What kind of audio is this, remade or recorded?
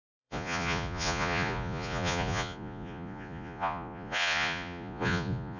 remade